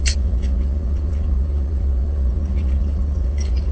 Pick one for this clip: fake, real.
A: fake